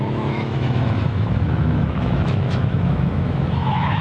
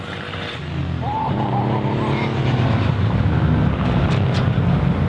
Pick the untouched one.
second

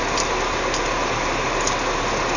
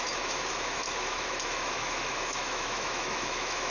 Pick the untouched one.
first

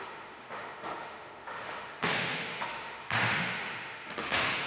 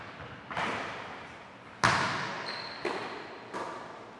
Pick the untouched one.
second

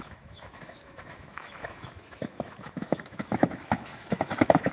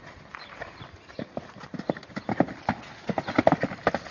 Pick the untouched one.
second